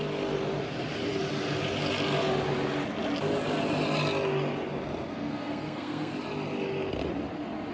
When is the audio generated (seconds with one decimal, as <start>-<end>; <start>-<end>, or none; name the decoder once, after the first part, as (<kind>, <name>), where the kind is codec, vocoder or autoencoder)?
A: 5.1-6.1 (codec, SNAC)